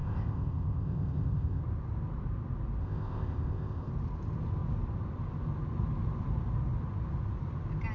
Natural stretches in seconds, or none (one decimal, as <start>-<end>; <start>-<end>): 1.6-2.8; 3.9-7.9